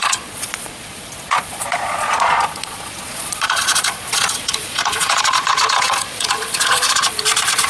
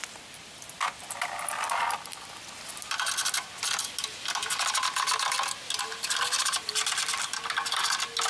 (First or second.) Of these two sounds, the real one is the second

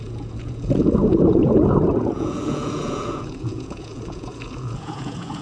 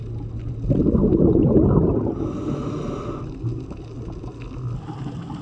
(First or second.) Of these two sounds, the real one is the second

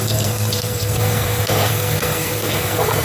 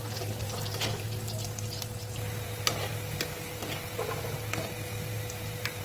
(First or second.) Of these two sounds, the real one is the second